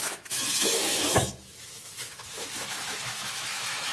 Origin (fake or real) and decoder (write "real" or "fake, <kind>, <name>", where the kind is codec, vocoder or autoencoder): fake, autoencoder, DAC-VAE